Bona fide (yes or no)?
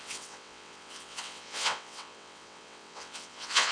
no